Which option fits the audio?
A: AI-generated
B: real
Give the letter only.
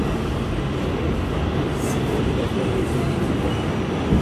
B